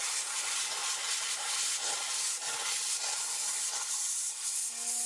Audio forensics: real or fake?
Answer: fake